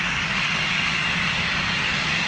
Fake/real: fake